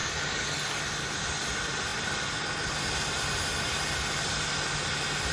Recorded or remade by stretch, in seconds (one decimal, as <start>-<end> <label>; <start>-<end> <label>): 0.0-0.8 remade; 0.8-5.3 recorded